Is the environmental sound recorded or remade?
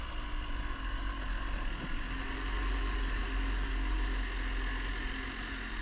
recorded